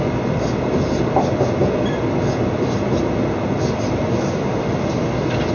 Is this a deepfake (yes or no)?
no